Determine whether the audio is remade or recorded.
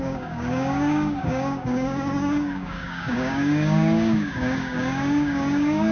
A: remade